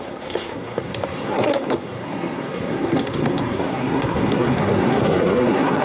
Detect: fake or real fake